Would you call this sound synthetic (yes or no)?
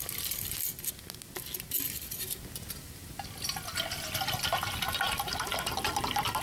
no